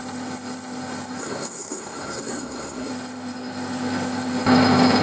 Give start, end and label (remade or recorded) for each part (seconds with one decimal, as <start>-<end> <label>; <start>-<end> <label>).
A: 0.0-1.2 recorded; 1.2-2.9 remade; 2.9-5.0 recorded